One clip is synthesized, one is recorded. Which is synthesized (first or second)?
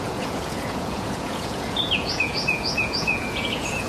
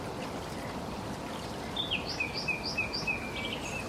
first